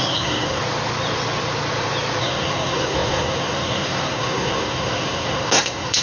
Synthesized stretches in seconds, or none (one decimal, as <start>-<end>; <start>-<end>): 0.0-0.6; 2.2-6.0